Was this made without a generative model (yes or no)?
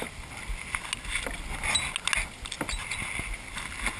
yes